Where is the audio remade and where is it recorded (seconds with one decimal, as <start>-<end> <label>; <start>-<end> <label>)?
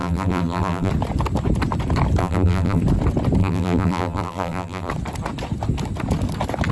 0.0-0.9 remade; 0.9-2.2 recorded; 2.2-2.8 remade; 2.8-3.4 recorded; 3.4-4.9 remade; 4.9-6.7 recorded